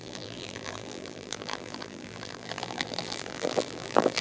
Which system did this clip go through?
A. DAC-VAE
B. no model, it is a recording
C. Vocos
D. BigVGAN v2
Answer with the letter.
D